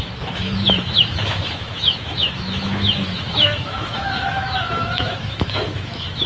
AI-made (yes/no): yes